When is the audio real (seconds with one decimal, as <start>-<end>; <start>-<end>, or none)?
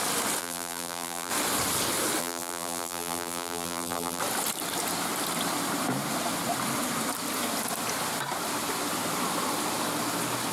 0.0-0.4; 1.3-2.2; 4.2-10.5